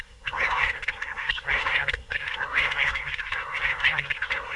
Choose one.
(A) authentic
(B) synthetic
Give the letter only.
B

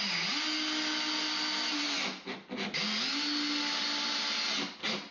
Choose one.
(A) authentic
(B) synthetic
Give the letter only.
A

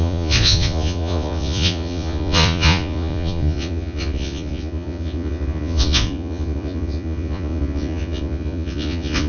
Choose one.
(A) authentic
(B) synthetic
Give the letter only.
B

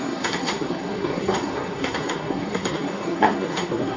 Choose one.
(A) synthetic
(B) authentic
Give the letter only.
A